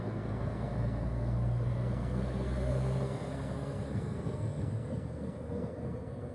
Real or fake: fake